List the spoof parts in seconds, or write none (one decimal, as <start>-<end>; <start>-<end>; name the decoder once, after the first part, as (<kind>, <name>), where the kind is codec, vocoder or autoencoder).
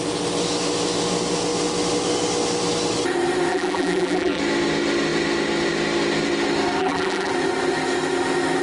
3.5-4.4 (vocoder, BigVGAN v2); 6.8-7.3